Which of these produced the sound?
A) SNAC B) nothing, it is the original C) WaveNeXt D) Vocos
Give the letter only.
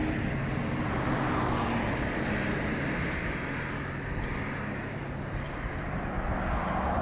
B